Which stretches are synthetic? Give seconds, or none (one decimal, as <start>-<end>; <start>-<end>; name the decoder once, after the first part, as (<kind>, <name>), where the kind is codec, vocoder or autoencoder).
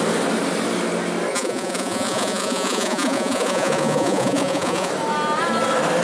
1.3-4.9 (vocoder, Vocos)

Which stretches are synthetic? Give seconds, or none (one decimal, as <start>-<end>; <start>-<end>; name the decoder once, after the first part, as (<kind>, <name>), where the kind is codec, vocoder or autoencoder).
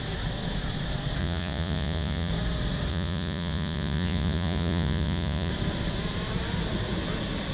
1.2-2.3 (vocoder, Vocos); 2.9-5.5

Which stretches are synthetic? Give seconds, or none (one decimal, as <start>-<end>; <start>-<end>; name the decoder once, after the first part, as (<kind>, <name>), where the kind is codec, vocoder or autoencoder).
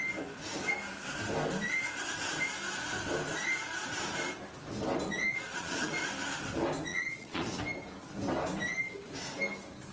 5.3-6.0 (vocoder, Vocos); 6.9-7.6